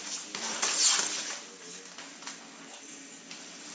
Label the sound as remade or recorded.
recorded